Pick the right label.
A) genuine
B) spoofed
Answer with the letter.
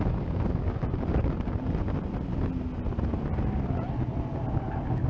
A